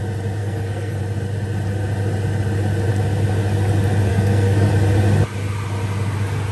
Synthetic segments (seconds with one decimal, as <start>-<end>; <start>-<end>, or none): 0.4-1.0; 4.1-4.7

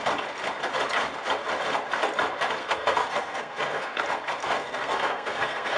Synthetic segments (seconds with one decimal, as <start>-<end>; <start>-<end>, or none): 2.6-4.0; 4.4-5.8